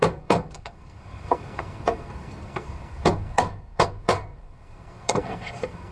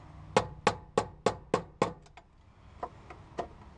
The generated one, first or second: first